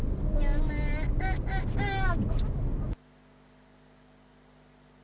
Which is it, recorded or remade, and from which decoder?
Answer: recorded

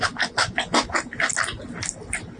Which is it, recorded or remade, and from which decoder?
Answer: recorded